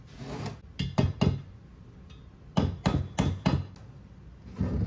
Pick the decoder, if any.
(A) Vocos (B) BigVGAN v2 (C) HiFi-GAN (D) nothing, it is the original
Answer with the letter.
D